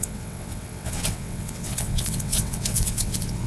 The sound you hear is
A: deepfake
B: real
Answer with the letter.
A